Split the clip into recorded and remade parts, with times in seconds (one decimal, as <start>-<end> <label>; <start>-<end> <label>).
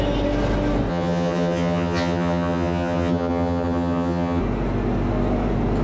0.0-0.9 recorded; 0.9-4.4 remade; 4.4-5.8 recorded